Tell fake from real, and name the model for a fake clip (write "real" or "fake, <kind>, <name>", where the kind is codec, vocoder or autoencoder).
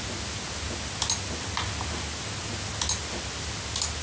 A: real